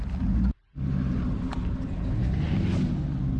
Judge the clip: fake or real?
real